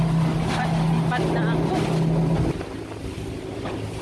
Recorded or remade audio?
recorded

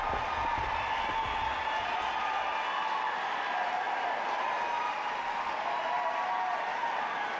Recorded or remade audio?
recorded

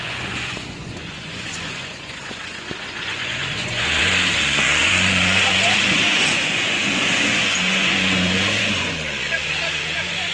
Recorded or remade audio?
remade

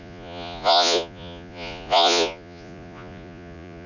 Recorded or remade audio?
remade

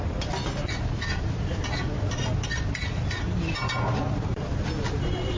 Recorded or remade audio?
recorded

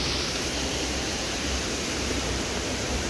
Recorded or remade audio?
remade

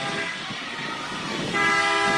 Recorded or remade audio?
remade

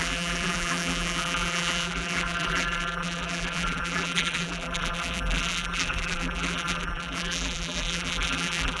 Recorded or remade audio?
remade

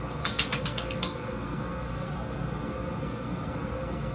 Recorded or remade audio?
remade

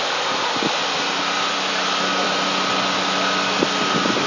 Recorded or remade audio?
recorded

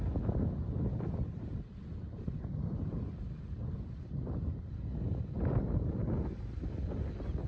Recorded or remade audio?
recorded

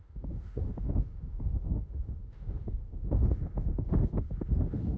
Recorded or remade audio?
remade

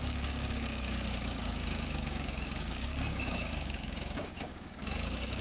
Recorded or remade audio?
remade